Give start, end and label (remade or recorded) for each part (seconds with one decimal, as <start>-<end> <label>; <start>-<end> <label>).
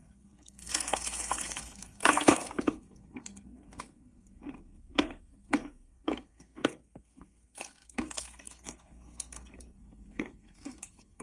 0.0-11.2 remade